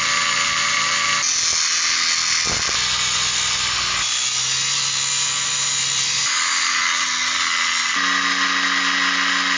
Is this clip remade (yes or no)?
no